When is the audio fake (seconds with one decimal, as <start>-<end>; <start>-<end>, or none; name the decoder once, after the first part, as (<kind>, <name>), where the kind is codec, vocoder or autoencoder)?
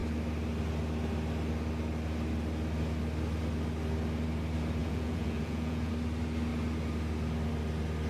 4.8-5.9 (vocoder, Vocos)